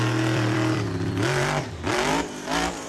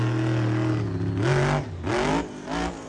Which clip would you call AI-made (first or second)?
first